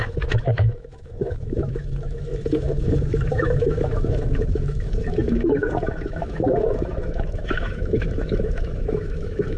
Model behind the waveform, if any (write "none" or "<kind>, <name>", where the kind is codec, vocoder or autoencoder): autoencoder, DAC-VAE